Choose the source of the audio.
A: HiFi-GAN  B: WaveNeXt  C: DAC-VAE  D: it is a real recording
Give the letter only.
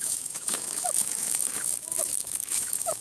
C